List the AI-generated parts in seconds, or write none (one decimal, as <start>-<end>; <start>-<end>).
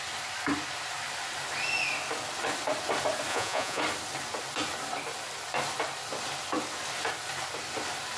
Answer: 3.3-3.8